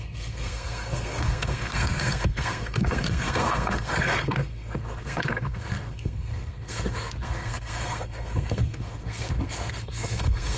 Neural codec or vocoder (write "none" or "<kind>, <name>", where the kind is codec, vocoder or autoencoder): codec, SNAC